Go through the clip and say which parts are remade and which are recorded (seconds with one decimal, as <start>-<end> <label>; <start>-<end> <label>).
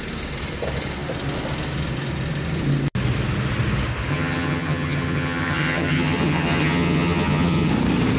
0.0-4.1 recorded; 4.1-7.7 remade; 7.7-8.2 recorded